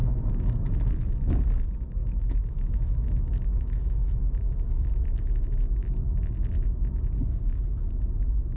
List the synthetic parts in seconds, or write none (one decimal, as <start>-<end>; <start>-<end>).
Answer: 0.0-0.7; 2.0-4.2